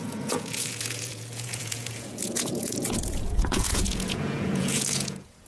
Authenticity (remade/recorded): remade